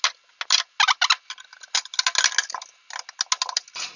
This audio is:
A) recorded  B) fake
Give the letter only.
A